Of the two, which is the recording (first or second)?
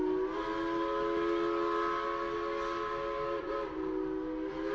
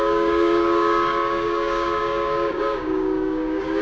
first